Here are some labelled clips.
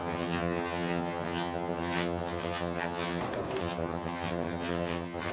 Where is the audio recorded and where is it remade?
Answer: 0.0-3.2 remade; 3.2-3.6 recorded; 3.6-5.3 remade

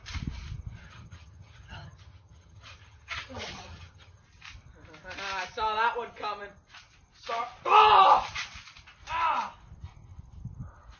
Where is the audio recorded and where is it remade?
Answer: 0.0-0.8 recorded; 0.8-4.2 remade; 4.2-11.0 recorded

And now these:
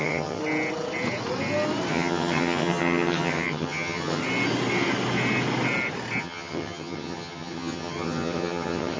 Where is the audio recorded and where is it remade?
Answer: 0.0-0.4 remade; 0.4-1.9 recorded; 1.9-4.2 remade; 4.2-6.2 recorded; 6.2-9.0 remade

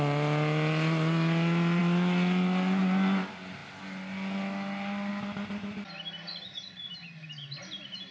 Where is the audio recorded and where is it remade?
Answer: 0.0-8.1 recorded

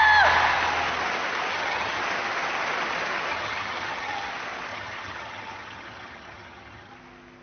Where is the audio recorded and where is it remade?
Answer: 0.0-1.5 recorded; 1.5-2.0 remade; 2.0-3.3 recorded; 3.3-4.3 remade; 4.3-4.7 recorded; 4.7-6.9 remade; 6.9-7.4 recorded